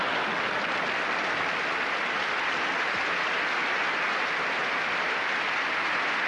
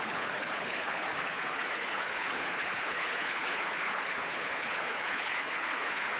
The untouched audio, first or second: first